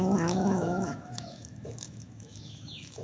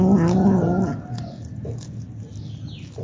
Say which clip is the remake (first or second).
first